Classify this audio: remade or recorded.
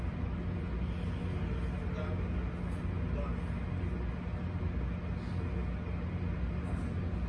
recorded